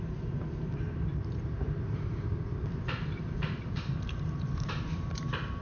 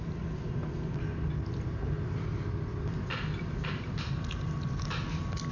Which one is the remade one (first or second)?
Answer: first